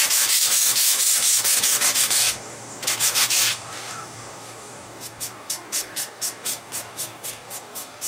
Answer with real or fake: fake